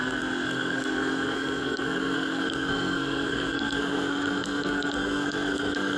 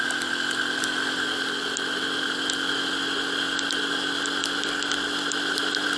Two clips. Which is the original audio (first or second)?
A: second